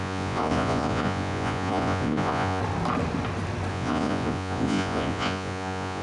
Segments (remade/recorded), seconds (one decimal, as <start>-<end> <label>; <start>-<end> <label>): 0.0-2.6 remade; 2.6-3.7 recorded; 3.7-6.0 remade